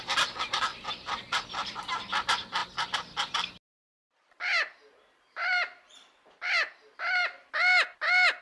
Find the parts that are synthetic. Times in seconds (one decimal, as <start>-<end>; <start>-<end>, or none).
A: 0.7-1.8; 2.6-4.1